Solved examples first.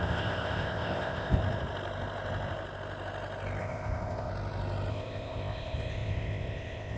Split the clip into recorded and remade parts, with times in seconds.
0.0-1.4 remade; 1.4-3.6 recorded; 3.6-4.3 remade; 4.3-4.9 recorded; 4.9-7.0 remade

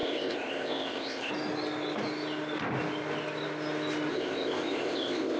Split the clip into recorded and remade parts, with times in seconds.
0.0-1.3 remade; 1.3-4.1 recorded; 4.1-5.4 remade

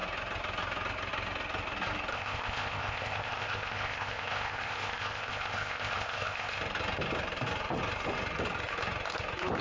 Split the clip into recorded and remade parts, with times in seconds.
0.0-2.1 recorded; 2.1-6.6 remade; 6.6-9.6 recorded

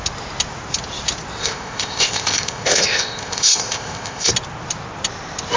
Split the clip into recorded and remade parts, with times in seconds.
0.0-1.4 recorded; 1.4-4.3 remade; 4.3-5.6 recorded

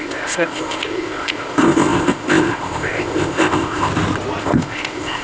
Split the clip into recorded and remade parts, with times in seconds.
0.0-3.9 remade; 3.9-4.4 recorded; 4.4-5.2 remade

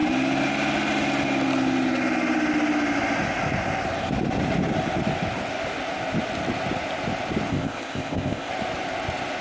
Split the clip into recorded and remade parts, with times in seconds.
0.0-7.5 recorded; 7.5-8.5 remade; 8.5-9.4 recorded